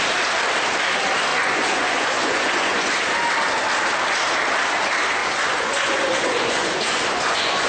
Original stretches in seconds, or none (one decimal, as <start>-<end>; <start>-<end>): 0.0-1.3; 2.9-5.2